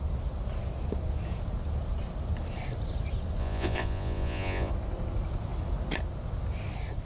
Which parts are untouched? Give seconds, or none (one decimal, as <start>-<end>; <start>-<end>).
0.0-3.4; 4.7-7.0